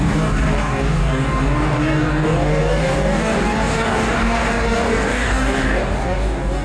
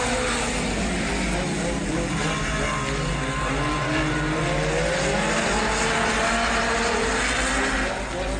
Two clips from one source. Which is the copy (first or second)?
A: first